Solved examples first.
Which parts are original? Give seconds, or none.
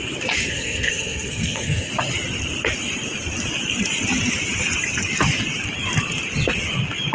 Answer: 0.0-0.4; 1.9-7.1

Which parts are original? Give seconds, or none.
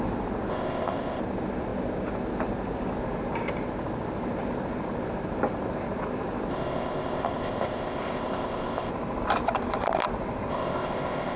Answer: 0.0-0.5; 1.2-6.5; 8.9-10.5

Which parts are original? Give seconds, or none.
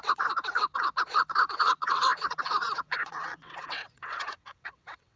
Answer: none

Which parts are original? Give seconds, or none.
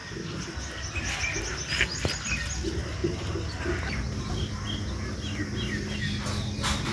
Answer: 0.0-6.9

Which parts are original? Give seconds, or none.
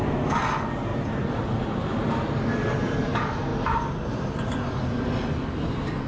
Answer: 0.0-0.9; 2.3-6.1